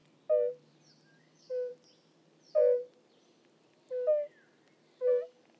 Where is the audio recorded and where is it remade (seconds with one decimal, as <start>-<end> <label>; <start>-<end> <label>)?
0.0-1.2 recorded; 1.2-1.7 remade; 1.7-5.1 recorded; 5.1-5.6 remade